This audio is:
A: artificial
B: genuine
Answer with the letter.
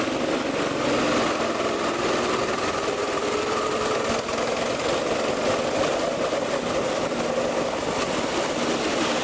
B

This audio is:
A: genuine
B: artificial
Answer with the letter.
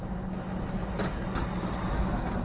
A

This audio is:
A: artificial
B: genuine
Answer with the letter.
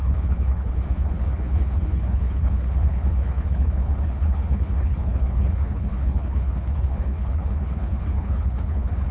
A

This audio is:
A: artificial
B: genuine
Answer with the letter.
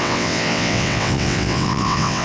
A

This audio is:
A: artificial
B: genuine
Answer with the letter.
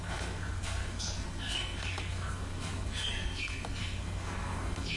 A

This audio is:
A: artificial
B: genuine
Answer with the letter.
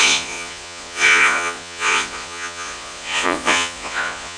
A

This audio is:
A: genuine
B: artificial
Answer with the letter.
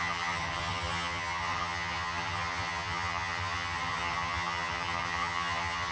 B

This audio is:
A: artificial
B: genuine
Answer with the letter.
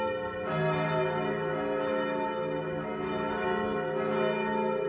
B